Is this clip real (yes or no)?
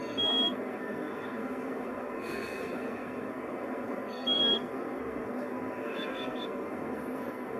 no